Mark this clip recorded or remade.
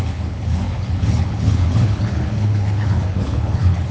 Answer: remade